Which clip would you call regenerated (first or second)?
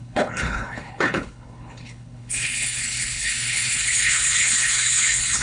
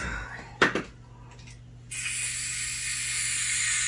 first